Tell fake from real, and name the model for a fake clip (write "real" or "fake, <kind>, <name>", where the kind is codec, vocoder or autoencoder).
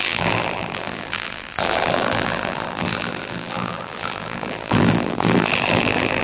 fake, vocoder, BigVGAN v2